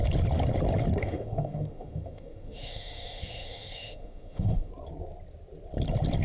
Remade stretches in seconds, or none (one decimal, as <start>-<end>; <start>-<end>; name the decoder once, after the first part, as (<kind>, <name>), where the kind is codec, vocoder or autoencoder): 1.0-4.7 (autoencoder, DAC-VAE)